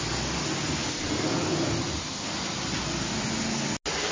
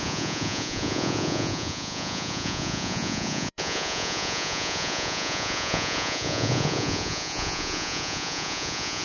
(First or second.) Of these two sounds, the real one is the first